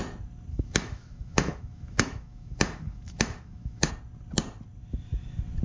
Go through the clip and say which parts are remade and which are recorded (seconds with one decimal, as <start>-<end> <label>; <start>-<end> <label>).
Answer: 0.0-0.5 recorded; 0.5-3.9 remade; 3.9-5.6 recorded